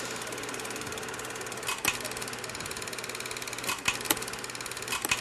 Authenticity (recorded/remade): recorded